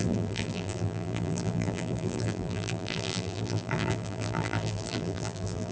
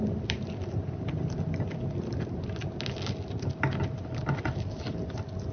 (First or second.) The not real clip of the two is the first